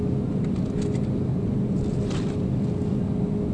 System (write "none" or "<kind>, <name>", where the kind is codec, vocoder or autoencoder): none